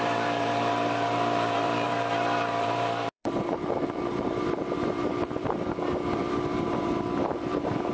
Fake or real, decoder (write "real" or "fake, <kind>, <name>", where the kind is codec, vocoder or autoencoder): fake, vocoder, BigVGAN v2